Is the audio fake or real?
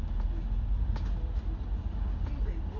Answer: real